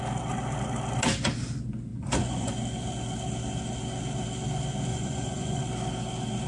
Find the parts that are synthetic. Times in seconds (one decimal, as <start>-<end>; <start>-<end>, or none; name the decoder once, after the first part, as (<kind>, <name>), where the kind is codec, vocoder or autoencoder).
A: 1.9-2.5 (vocoder, Vocos); 4.9-5.6